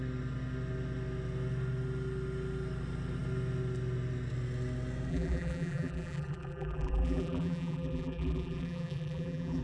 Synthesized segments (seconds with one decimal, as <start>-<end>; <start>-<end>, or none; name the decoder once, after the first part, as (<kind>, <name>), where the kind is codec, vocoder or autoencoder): 5.1-9.6 (vocoder, BigVGAN v2)